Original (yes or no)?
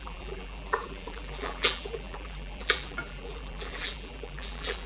no